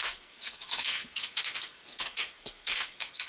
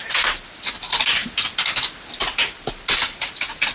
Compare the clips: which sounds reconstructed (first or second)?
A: first